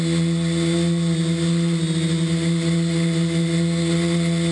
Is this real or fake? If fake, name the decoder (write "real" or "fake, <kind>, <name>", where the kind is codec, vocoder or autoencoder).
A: real